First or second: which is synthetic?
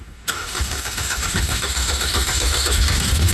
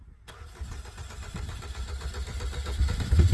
first